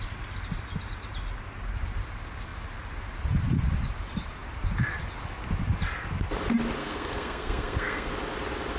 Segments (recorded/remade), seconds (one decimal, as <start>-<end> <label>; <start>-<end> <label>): 0.0-6.8 recorded; 6.8-8.1 remade; 8.1-8.8 recorded